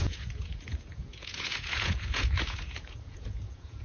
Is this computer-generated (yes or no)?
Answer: yes